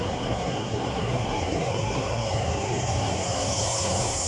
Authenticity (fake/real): fake